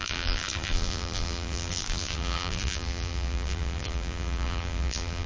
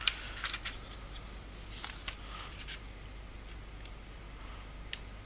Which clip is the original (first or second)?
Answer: second